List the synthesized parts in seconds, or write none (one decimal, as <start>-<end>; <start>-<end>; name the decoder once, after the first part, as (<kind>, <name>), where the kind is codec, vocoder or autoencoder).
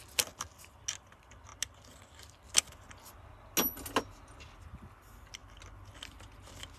none